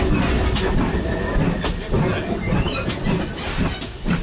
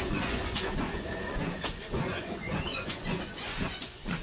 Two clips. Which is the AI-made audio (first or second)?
second